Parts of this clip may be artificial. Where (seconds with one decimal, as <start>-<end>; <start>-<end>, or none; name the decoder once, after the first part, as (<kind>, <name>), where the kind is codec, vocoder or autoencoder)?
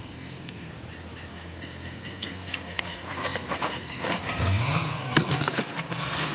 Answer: 0.0-0.7 (codec, SNAC); 1.3-6.3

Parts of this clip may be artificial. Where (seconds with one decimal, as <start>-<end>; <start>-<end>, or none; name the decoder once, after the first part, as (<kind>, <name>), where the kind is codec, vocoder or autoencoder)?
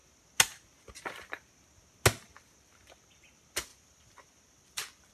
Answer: 3.7-5.1 (vocoder, BigVGAN v2)